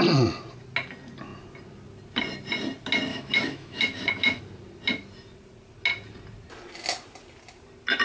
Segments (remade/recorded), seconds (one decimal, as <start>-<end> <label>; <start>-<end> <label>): 0.0-3.1 recorded; 3.1-4.4 remade; 4.4-8.0 recorded